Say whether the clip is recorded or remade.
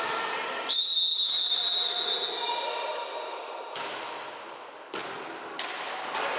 recorded